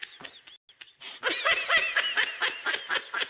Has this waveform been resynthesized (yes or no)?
no